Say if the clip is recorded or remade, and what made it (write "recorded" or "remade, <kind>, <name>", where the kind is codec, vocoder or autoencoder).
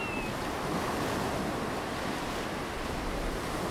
recorded